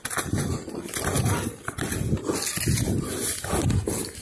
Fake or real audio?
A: real